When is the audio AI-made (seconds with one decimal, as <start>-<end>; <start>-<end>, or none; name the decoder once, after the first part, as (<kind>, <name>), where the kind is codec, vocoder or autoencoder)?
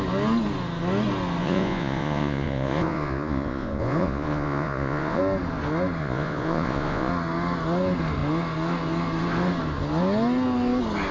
1.4-5.2 (vocoder, Vocos); 6.0-7.1